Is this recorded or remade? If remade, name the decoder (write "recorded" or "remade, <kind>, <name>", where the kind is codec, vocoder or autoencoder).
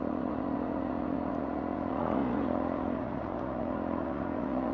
remade, vocoder, Vocos